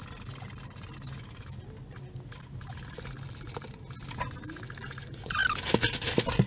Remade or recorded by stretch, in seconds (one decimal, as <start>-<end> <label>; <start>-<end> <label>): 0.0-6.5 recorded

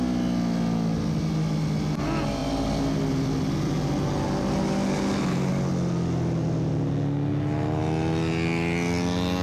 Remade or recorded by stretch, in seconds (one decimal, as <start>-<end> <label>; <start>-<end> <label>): 0.0-9.4 recorded

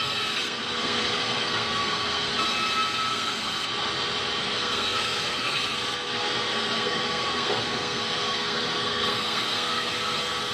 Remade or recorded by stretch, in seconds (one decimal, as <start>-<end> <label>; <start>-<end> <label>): 0.0-2.3 remade; 2.3-3.1 recorded; 3.1-3.7 remade; 3.7-4.4 recorded; 4.4-10.5 remade